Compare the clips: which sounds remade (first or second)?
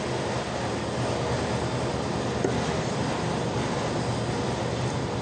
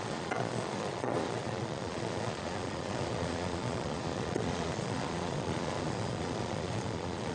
second